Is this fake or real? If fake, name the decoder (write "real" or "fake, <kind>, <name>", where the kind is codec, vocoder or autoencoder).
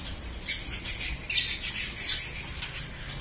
real